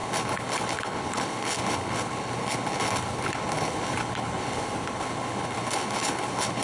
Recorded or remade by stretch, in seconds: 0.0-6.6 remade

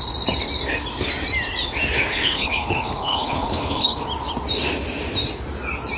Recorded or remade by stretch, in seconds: 0.0-2.1 recorded; 2.1-4.0 remade; 4.0-6.0 recorded

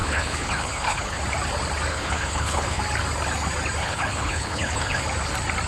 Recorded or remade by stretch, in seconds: 0.0-1.2 remade; 1.2-1.9 recorded; 1.9-2.8 remade; 2.8-3.8 recorded; 3.8-5.0 remade; 5.0-5.7 recorded

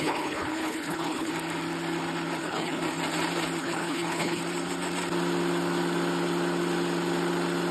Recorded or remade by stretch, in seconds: 0.0-1.3 remade; 1.3-2.4 recorded; 2.4-2.8 remade; 2.8-3.6 recorded; 3.6-4.4 remade; 4.4-7.7 recorded